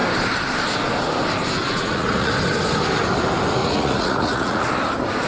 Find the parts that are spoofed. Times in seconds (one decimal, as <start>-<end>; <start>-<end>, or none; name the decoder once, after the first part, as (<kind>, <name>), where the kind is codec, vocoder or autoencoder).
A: 1.7-2.3 (vocoder, Vocos); 3.6-4.7